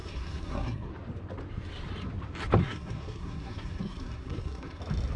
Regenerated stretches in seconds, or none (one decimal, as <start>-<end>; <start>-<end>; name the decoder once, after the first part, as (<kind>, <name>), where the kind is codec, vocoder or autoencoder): 0.0-0.9 (codec, SNAC); 2.6-4.8

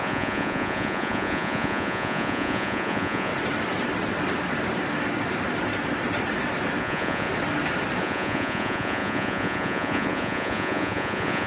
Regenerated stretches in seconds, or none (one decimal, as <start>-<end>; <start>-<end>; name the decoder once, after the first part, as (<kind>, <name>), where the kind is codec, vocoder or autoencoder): 0.0-3.3 (vocoder, Vocos); 6.8-7.3; 8.0-11.5

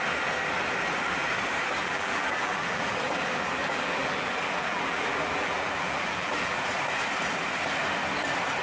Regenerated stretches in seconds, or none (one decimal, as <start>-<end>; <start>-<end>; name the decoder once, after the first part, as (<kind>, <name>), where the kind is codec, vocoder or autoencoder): 1.8-6.7 (vocoder, BigVGAN v2)

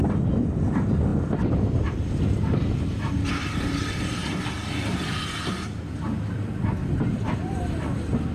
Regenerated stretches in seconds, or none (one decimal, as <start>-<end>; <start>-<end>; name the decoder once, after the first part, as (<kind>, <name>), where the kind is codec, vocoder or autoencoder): none

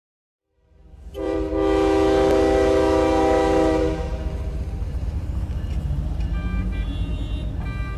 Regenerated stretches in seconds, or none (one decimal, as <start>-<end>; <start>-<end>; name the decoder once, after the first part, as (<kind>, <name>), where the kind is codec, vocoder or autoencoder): 0.8-1.5 (vocoder, BigVGAN v2)